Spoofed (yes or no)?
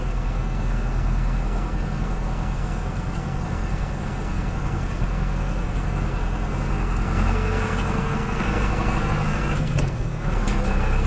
yes